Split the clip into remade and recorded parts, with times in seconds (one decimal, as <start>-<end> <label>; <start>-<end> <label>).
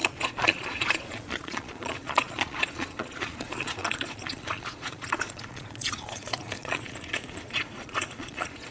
0.0-8.7 remade